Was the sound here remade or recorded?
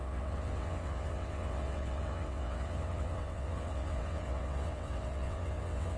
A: remade